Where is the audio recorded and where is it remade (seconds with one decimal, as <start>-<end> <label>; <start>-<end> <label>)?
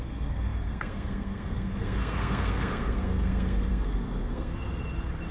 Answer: 0.0-4.5 remade; 4.5-5.3 recorded